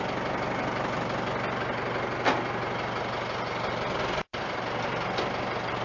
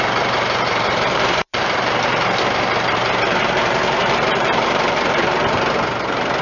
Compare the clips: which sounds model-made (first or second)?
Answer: second